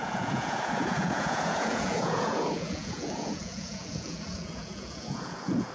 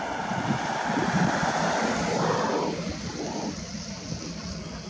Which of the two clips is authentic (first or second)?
second